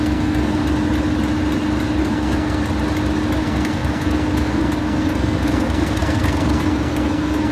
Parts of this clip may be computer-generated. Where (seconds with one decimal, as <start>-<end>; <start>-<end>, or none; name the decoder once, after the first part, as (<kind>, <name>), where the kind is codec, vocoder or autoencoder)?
0.0-0.6 (codec, SNAC); 2.0-2.6; 3.4-7.5